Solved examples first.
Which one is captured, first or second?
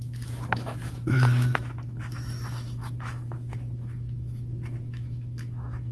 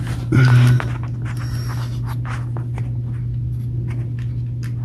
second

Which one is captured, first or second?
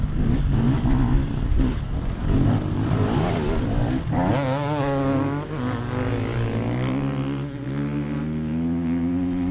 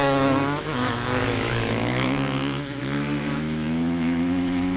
first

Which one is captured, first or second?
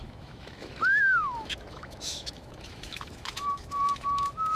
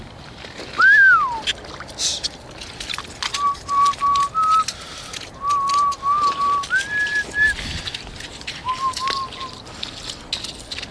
second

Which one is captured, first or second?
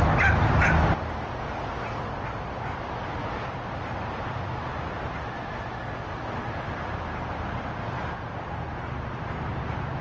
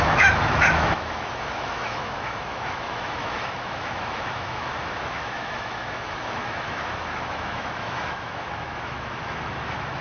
first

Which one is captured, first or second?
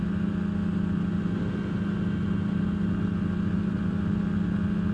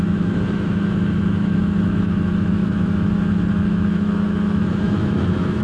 first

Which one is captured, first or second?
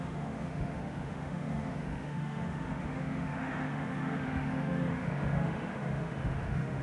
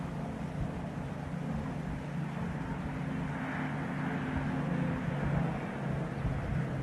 second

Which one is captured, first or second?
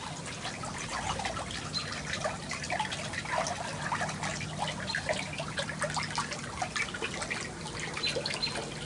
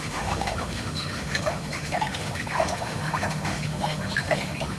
first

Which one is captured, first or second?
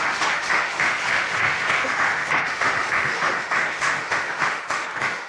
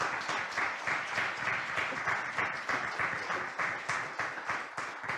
second